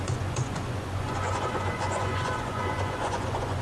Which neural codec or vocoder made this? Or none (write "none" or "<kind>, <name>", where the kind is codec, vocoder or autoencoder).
vocoder, Vocos